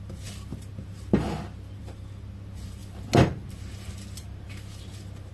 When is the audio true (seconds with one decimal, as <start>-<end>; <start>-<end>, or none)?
0.0-5.3